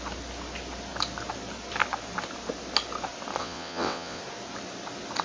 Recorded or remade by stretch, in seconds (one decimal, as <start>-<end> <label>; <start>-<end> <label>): 0.0-3.4 recorded; 3.4-4.2 remade; 4.2-5.2 recorded